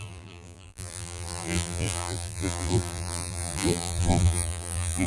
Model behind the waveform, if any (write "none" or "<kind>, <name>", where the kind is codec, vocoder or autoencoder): vocoder, BigVGAN v2